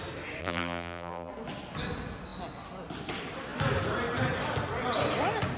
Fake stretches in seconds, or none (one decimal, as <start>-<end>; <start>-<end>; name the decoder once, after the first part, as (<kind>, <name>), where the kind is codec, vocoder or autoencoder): 0.4-1.3 (vocoder, BigVGAN v2)